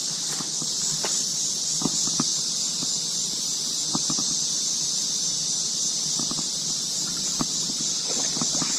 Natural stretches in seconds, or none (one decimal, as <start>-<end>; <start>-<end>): 0.0-8.8